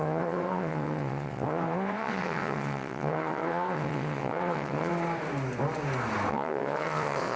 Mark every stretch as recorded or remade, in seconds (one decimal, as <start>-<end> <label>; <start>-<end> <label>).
0.0-4.9 remade; 4.9-6.3 recorded; 6.3-7.4 remade